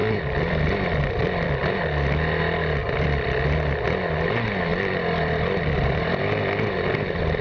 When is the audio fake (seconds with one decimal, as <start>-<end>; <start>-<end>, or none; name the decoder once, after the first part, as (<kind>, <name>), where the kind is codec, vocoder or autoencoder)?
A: 0.0-1.8 (vocoder, BigVGAN v2); 2.8-3.4; 4.7-6.2